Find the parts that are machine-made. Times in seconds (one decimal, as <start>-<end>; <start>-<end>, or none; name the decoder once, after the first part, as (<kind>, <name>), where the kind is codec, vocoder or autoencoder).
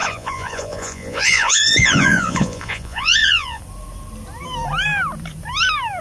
0.0-3.6 (vocoder, Vocos)